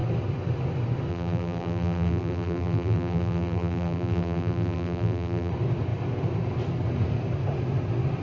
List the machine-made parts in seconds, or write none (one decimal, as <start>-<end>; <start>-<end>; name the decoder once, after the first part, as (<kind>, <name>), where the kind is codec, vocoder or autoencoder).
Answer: 1.1-5.5 (vocoder, BigVGAN v2)

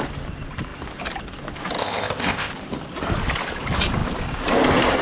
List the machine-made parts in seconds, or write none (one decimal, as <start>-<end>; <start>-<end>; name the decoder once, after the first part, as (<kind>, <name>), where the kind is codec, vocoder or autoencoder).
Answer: 1.8-2.5 (codec, ZipCodec)

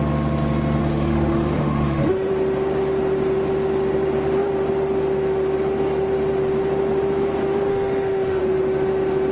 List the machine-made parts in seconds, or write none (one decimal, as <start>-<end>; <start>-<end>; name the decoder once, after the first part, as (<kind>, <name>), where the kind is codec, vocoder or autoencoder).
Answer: 0.8-2.3 (autoencoder, DAC-VAE); 7.7-8.4

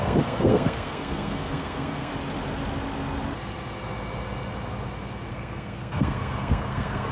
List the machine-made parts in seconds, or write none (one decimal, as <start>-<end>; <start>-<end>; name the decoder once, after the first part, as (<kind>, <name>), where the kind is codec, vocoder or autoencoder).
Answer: 0.0-2.1 (codec, SNAC); 5.3-7.1